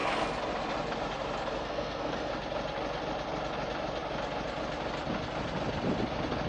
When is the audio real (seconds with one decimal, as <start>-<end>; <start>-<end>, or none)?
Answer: 0.0-1.5; 2.3-6.5